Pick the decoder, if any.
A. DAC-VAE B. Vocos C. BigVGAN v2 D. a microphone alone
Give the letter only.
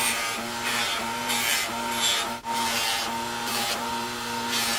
C